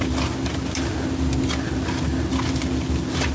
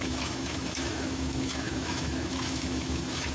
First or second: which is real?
first